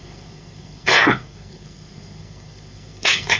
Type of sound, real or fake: fake